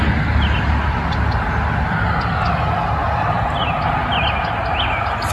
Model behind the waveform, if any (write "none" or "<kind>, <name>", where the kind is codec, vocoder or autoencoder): none